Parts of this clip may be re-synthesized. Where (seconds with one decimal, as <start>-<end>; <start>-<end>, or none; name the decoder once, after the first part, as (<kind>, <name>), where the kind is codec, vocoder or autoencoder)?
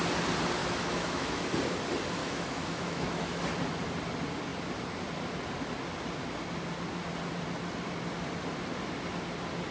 0.6-1.4 (autoencoder, DAC-VAE); 2.2-3.4